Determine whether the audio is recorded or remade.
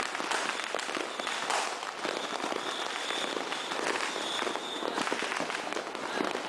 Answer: recorded